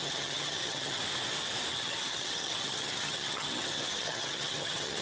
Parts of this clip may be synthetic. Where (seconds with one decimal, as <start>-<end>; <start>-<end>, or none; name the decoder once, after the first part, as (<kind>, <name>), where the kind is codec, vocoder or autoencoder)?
0.0-1.0 (vocoder, HiFi-GAN); 1.7-5.0